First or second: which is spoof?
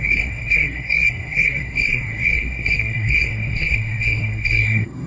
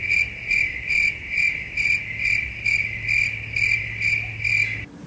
first